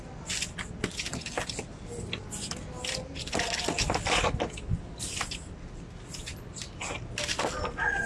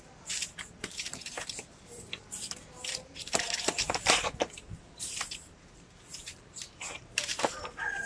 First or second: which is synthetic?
second